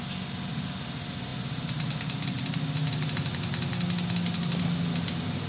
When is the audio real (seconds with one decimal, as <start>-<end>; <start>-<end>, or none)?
0.0-5.5